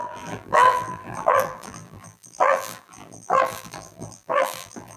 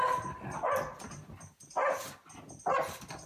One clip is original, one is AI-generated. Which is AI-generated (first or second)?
first